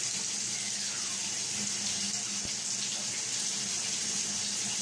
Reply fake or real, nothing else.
real